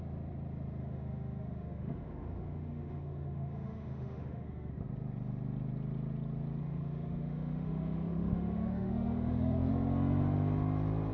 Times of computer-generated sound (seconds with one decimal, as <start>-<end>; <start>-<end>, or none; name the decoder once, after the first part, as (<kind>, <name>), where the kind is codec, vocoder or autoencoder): 0.8-4.7 (autoencoder, DAC-VAE); 6.6-9.7